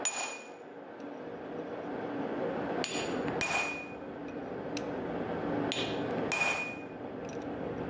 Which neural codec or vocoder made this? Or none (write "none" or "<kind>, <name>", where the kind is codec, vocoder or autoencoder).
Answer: none